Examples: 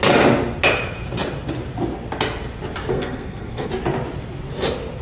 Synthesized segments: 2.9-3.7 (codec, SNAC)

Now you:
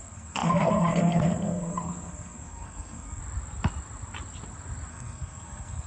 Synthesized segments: 0.0-3.2 (codec, SNAC); 4.9-5.9

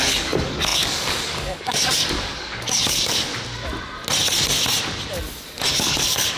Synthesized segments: 0.0-3.3 (codec, DAC); 5.7-6.4

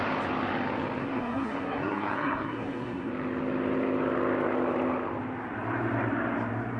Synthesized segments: 1.0-3.1 (codec, SNAC)

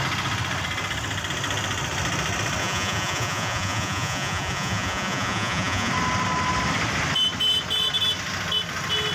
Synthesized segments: 2.6-5.9 (vocoder, Vocos)

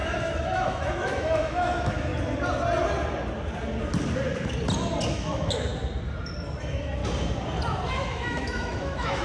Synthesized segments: 0.0-2.1 (autoencoder, DAC-VAE); 5.1-5.7; 6.6-7.0; 7.9-9.2